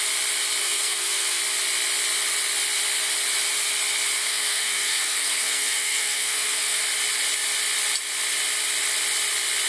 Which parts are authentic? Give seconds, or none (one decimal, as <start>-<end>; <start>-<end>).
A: 0.0-0.6; 1.4-4.2; 6.8-9.7